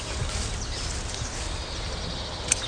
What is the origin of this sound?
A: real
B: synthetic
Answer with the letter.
A